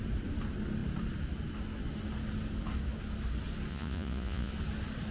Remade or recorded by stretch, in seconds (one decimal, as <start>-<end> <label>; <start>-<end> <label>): 0.0-3.7 recorded; 3.7-4.5 remade; 4.5-5.1 recorded